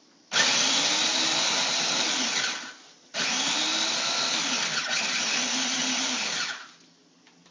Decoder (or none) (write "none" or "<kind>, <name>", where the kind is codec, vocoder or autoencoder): none